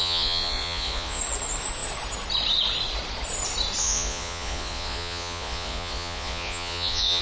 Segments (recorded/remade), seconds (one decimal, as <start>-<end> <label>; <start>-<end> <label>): 0.0-1.2 remade; 1.2-3.8 recorded; 3.8-7.2 remade